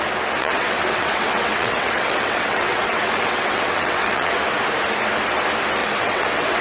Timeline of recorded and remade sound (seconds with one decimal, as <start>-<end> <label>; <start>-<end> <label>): 0.0-0.4 recorded; 0.4-4.4 remade; 4.4-5.8 recorded; 5.8-6.6 remade